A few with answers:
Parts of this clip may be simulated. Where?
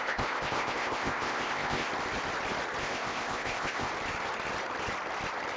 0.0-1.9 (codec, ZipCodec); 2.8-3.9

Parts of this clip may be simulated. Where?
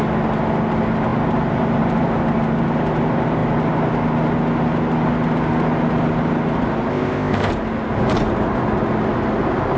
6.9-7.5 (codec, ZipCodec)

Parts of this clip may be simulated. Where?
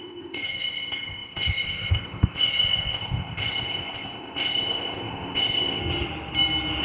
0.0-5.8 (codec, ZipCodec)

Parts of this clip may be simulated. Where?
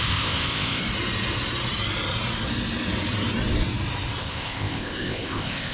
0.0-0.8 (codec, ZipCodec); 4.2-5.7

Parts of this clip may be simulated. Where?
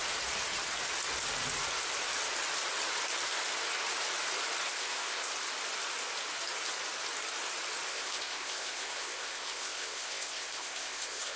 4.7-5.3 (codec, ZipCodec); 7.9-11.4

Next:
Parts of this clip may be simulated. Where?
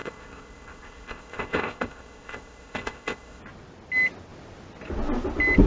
0.0-3.4 (codec, ZipCodec)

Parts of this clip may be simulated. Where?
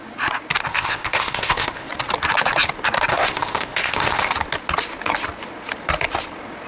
0.7-1.9 (codec, ZipCodec); 3.1-4.3